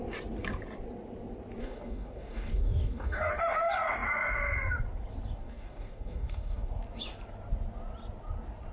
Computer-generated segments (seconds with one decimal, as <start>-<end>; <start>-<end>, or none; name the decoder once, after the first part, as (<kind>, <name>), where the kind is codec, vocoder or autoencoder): 1.6-3.3 (codec, DAC); 5.4-6.7

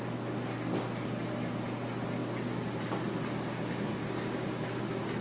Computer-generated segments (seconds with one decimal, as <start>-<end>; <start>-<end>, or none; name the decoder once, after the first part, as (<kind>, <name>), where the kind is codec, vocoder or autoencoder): 3.9-4.8 (codec, DAC)

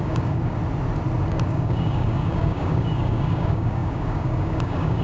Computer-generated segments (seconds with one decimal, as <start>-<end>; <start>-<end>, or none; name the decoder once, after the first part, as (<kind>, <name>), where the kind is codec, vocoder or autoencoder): 0.0-0.6 (codec, DAC); 1.3-5.0